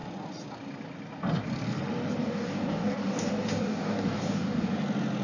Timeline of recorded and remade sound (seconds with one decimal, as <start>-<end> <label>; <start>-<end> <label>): 0.0-2.2 recorded; 2.2-4.7 remade; 4.7-5.2 recorded